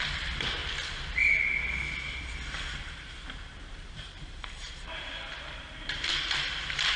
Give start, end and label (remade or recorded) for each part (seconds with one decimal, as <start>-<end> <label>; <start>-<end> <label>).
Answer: 0.0-0.6 remade; 0.6-2.8 recorded; 2.8-7.0 remade